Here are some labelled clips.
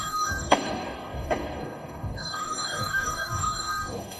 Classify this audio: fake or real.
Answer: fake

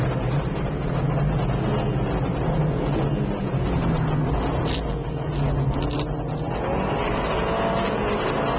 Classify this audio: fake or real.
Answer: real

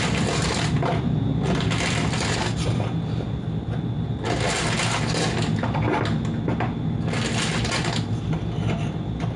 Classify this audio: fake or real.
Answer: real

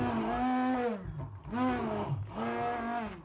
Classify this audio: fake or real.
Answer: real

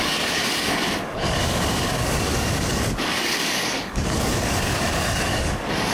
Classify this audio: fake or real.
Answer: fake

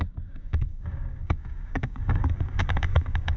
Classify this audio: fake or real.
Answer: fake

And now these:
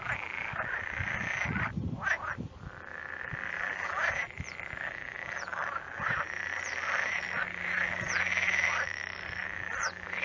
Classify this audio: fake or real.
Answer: real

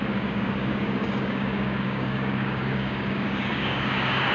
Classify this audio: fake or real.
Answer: fake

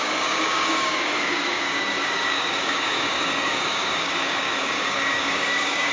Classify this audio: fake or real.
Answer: fake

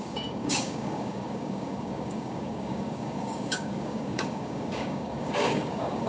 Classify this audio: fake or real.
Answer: fake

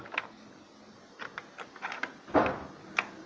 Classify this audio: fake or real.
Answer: real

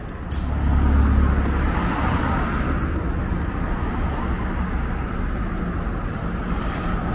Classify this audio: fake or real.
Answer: real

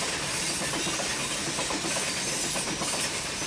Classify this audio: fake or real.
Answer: real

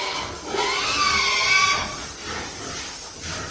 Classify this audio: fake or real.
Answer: real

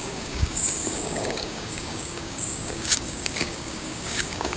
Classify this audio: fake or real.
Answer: fake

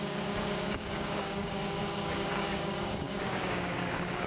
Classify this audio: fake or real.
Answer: fake